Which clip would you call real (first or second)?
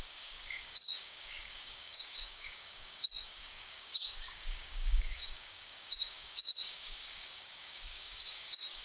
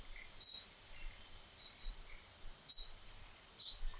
second